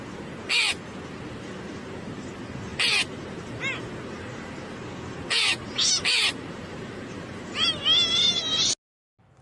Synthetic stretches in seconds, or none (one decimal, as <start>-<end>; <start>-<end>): none